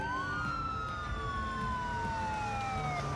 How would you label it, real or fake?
real